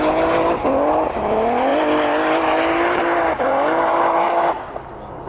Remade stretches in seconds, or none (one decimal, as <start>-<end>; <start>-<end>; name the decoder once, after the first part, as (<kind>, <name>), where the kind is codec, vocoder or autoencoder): none